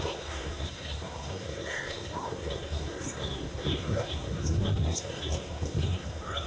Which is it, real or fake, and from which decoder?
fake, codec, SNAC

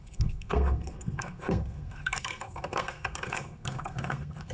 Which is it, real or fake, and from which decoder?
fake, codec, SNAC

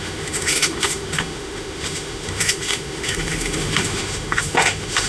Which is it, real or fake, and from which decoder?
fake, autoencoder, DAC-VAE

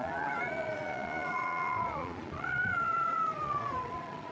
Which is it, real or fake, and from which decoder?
fake, vocoder, Vocos